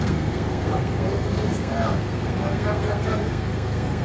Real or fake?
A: fake